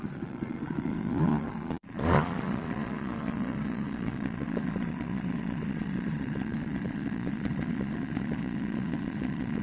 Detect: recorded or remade remade